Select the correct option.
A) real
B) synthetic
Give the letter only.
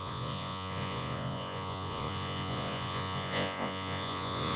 B